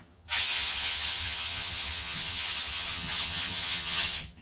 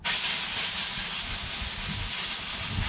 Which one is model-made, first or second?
first